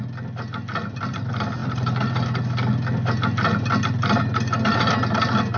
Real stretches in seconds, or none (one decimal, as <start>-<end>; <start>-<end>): 0.0-5.6